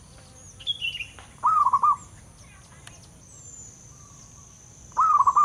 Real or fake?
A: real